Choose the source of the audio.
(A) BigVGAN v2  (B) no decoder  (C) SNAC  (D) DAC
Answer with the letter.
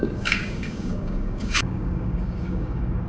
D